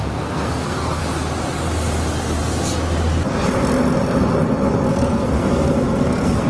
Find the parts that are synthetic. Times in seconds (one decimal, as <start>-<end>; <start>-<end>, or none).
0.0-1.0; 4.9-6.5